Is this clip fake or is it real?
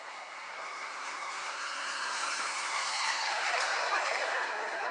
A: fake